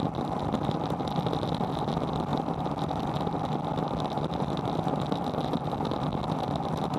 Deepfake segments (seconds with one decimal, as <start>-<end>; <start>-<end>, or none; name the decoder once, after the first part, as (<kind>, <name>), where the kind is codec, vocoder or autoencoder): none

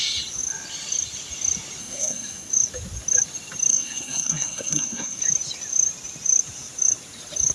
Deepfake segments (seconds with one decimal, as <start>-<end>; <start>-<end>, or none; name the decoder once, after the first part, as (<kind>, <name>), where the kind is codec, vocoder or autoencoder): 1.8-2.5 (codec, SNAC); 3.7-5.2

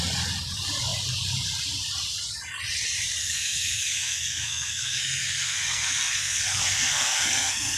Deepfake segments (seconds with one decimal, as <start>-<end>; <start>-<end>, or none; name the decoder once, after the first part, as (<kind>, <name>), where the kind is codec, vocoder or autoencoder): 3.2-7.8 (codec, SNAC)

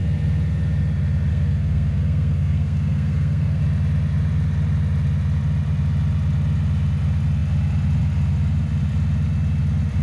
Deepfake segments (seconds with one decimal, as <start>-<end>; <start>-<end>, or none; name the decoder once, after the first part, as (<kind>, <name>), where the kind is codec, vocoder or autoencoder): 1.3-3.6 (codec, SNAC)

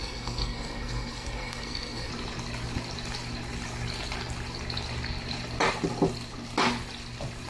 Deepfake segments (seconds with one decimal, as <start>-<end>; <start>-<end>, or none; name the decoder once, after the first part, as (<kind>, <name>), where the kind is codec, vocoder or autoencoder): 0.0-2.1 (codec, SNAC)

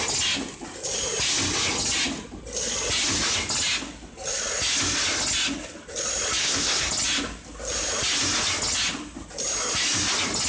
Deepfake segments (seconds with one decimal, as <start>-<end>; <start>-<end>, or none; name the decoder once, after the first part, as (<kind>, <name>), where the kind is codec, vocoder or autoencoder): 6.4-6.9 (codec, SNAC)

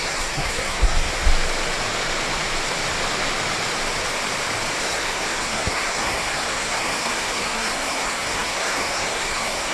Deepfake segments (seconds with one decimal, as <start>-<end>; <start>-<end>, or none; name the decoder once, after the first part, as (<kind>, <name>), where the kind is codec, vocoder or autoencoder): 0.0-1.1 (codec, SNAC); 4.8-9.7

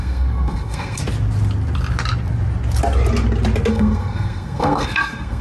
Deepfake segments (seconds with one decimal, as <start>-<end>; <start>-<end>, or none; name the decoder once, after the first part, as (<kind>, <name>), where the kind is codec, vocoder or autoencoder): 0.0-1.0 (codec, SNAC); 3.7-5.4